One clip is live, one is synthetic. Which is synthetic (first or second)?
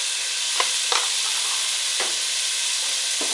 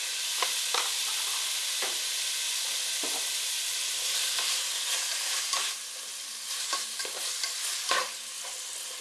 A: second